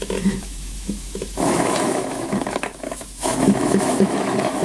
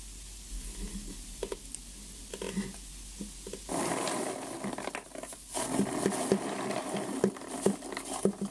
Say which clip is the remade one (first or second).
first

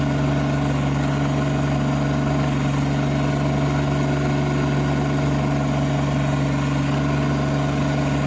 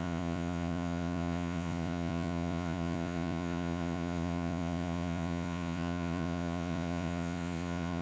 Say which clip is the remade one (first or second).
second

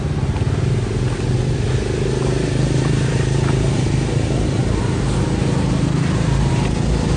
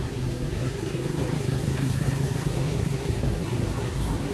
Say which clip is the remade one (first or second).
second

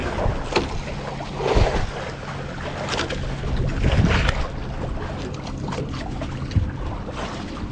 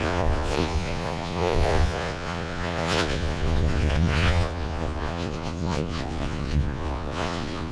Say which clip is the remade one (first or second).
second